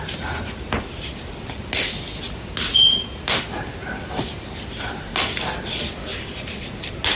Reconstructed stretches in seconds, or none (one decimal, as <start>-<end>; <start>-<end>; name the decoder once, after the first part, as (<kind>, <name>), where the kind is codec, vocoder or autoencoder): 2.7-3.2 (vocoder, Vocos)